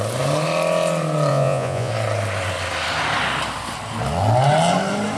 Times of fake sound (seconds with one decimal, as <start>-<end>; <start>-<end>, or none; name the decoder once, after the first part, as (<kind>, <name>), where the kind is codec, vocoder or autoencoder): 1.3-1.9 (vocoder, Vocos)